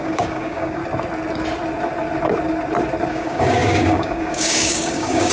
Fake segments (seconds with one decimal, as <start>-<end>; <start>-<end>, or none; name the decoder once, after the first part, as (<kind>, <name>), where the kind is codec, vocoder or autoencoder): 0.0-0.8 (codec, DAC); 3.1-5.3